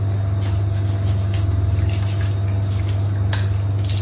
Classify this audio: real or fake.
real